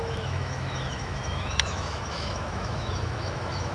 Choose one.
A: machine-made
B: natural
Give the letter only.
A